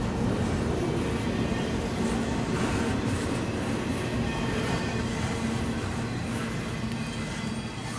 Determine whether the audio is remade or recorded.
recorded